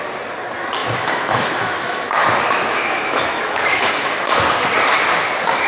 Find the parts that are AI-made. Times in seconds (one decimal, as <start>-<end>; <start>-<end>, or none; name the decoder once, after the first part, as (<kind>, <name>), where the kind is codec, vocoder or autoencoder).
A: 0.8-4.2 (autoencoder, DAC-VAE)